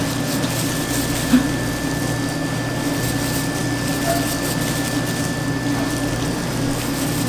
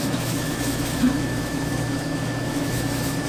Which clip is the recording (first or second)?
first